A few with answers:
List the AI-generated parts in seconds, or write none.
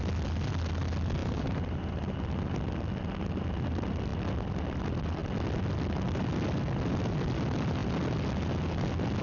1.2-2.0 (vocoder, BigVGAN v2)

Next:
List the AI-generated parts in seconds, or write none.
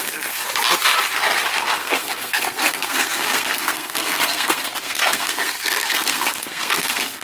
0.0-0.4 (codec, SNAC); 1.6-7.2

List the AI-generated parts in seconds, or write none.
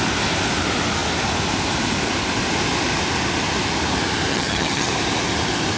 4.3-4.9 (vocoder, HiFi-GAN)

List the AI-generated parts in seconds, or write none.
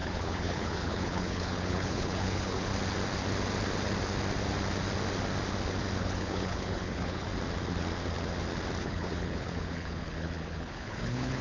0.0-2.7 (codec, HILCodec); 6.0-7.3; 8.8-11.4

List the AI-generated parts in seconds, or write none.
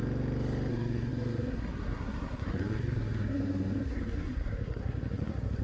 0.7-5.6 (codec, SNAC)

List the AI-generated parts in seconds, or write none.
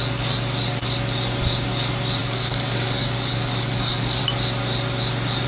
2.2-4.2 (codec, DAC)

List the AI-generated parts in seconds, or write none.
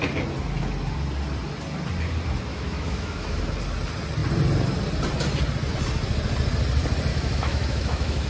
2.5-3.4 (autoencoder, DAC-VAE); 7.1-8.3